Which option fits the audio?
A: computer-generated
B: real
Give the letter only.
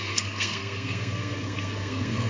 A